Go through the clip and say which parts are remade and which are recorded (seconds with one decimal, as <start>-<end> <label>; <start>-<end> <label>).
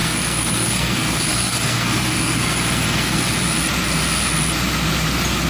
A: 0.0-3.3 remade; 3.3-5.5 recorded